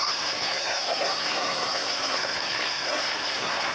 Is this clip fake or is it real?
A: fake